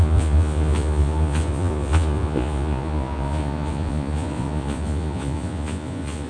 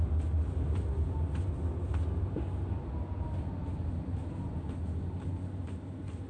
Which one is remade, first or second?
first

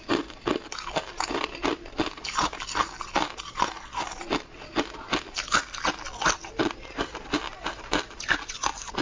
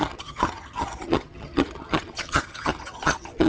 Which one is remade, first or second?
second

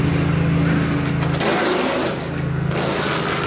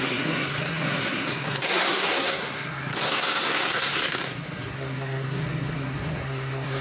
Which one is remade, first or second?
second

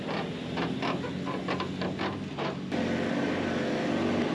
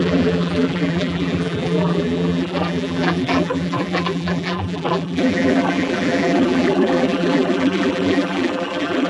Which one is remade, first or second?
second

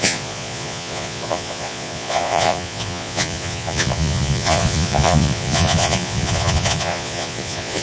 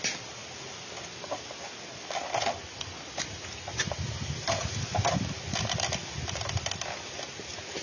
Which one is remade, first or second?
first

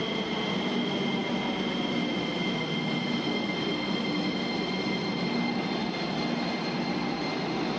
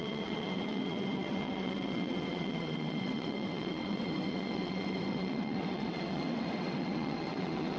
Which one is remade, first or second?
second